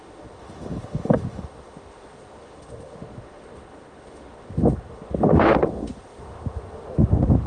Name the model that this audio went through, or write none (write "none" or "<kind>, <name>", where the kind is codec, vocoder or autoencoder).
autoencoder, DAC-VAE